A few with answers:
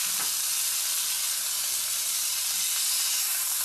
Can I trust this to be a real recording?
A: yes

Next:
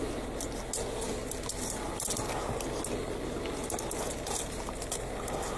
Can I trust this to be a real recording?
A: yes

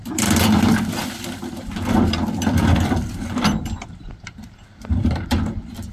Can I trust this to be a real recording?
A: no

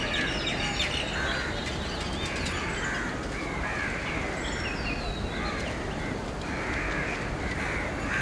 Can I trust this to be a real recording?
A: yes